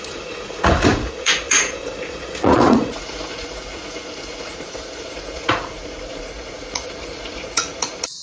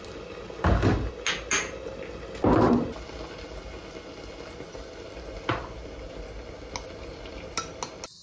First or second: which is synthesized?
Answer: first